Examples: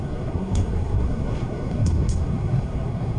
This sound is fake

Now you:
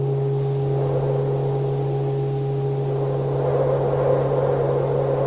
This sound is real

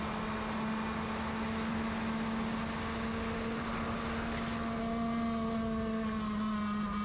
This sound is real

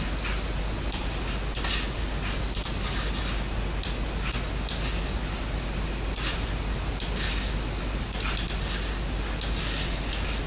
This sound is real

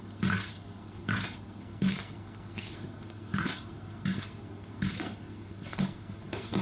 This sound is fake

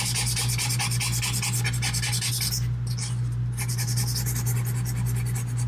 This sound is real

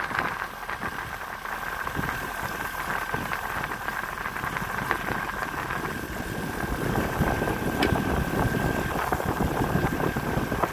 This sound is real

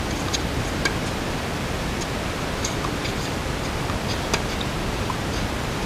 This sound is real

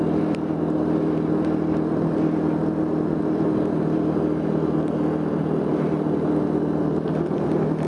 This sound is real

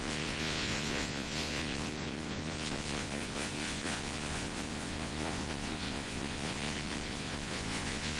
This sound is fake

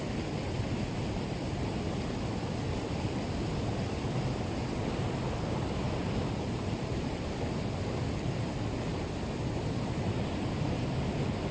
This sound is real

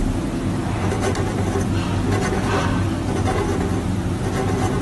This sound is real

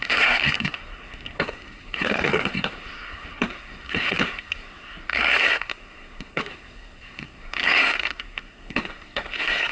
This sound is fake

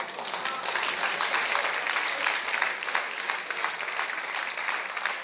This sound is real